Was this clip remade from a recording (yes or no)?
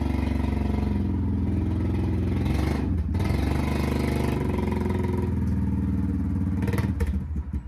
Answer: no